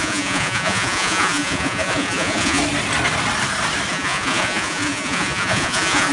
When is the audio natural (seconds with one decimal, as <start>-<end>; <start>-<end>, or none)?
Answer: 2.6-3.9